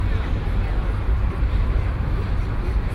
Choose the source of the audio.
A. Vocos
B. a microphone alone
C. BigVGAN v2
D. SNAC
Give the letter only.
B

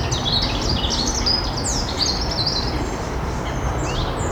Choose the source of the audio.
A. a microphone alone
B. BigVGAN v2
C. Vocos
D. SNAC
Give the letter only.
A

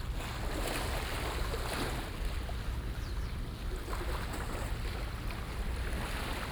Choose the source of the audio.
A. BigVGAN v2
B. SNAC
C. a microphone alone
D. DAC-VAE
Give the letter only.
C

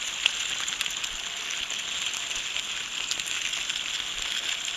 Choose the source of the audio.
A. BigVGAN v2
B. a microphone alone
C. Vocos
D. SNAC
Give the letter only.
B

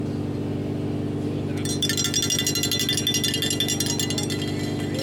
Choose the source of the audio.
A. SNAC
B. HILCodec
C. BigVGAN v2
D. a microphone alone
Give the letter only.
D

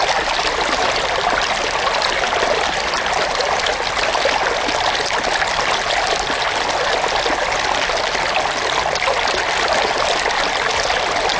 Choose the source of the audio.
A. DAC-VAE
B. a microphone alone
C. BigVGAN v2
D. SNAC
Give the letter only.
B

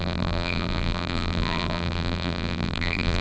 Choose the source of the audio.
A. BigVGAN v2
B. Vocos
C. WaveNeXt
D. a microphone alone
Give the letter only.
A